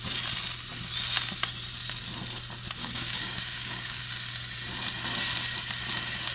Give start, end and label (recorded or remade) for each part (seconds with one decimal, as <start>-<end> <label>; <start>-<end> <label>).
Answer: 0.0-2.8 recorded; 2.8-4.0 remade; 4.0-6.3 recorded